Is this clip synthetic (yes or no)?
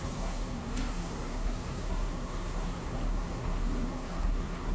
yes